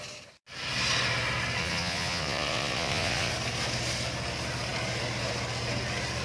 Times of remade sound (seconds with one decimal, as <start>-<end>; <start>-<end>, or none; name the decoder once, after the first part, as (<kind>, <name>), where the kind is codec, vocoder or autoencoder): 1.6-3.3 (vocoder, Vocos)